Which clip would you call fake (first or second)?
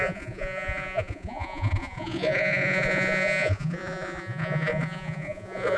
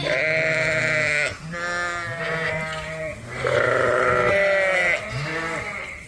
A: first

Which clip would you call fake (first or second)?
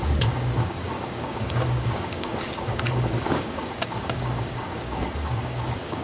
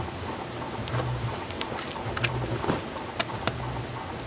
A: first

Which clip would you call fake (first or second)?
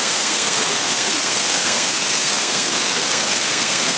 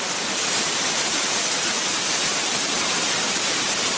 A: first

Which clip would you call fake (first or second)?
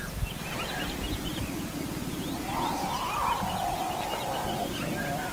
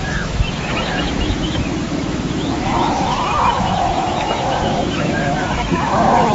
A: second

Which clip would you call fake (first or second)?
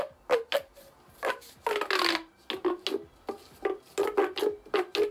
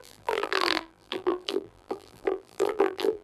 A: second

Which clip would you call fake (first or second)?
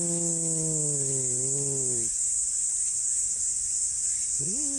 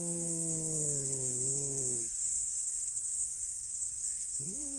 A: second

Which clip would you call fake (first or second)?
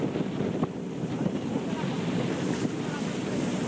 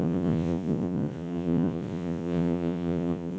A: second